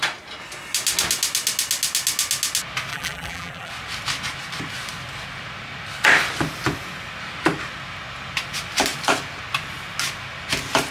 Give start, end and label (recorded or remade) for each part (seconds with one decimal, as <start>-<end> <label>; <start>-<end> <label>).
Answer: 0.0-2.9 recorded; 2.9-3.7 remade; 3.7-10.9 recorded

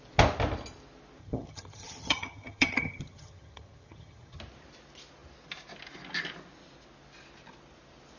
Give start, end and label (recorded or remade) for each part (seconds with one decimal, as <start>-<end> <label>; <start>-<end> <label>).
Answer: 0.0-1.2 recorded; 1.2-4.4 remade; 4.4-8.2 recorded

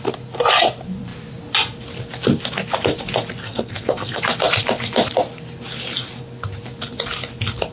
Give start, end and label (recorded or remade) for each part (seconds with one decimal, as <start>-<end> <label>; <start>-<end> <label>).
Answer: 0.0-3.4 recorded; 3.4-4.2 remade; 4.2-7.7 recorded

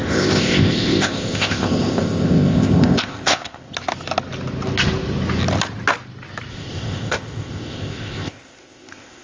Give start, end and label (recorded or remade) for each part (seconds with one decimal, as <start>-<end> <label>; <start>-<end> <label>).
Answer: 0.0-3.7 remade; 3.7-6.5 recorded; 6.5-9.2 remade

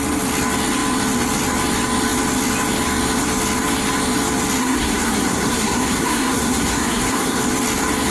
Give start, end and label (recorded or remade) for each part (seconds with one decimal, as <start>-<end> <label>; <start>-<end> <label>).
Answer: 0.0-4.6 recorded; 4.6-7.4 remade; 7.4-8.1 recorded